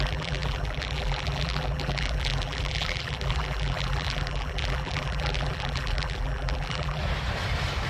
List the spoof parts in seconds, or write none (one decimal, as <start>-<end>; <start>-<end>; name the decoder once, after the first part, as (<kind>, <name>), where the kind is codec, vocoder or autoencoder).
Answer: 0.0-7.0 (vocoder, BigVGAN v2)